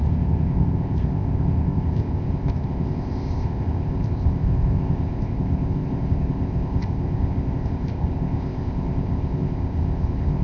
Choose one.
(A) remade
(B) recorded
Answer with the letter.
A